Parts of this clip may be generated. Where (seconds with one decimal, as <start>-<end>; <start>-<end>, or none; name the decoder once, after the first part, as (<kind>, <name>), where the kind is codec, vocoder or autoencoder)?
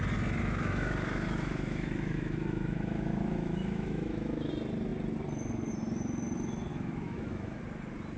0.4-4.5 (autoencoder, DAC-VAE); 6.7-7.6